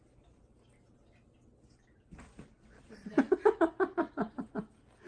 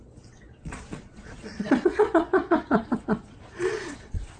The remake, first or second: second